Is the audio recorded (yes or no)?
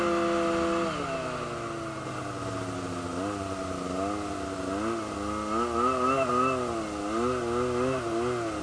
yes